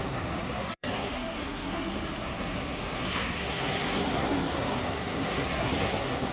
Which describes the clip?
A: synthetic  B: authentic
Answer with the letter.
A